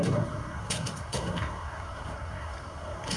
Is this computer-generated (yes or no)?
yes